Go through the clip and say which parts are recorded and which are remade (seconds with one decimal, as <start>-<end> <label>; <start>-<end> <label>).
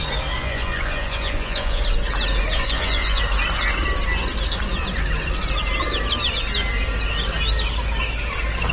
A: 0.0-0.4 recorded; 0.4-1.8 remade; 1.8-2.5 recorded; 2.5-3.2 remade; 3.2-8.7 recorded